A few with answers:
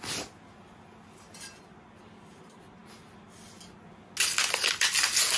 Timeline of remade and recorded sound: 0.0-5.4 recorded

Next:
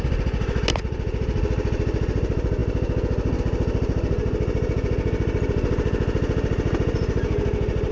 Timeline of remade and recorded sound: 0.0-7.9 recorded

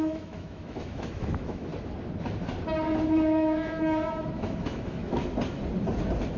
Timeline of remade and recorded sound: 0.0-1.7 remade; 1.7-3.1 recorded; 3.1-5.2 remade; 5.2-6.4 recorded

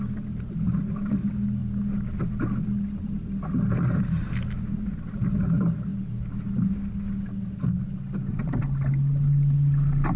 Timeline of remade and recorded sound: 0.0-10.2 recorded

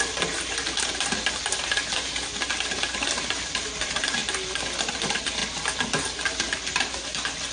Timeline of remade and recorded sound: 0.0-7.5 recorded

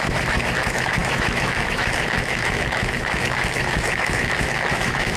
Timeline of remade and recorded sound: 0.0-5.2 remade

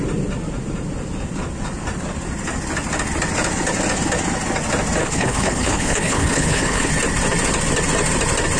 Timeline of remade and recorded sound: 0.0-5.0 recorded; 5.0-6.9 remade; 6.9-8.6 recorded

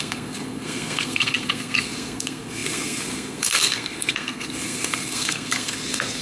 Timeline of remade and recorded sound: 0.0-6.2 remade